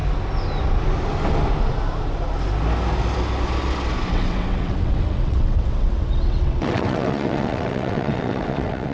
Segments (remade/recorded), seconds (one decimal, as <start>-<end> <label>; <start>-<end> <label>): 0.0-4.1 recorded; 4.1-8.9 remade